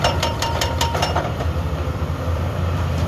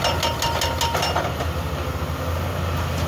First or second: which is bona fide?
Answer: second